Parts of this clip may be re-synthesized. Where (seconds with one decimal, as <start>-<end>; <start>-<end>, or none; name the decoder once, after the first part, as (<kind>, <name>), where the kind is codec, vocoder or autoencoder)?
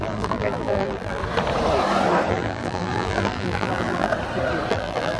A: 0.0-1.2 (vocoder, BigVGAN v2); 2.3-4.1; 4.7-5.2